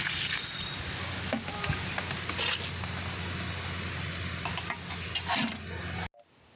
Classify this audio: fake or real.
real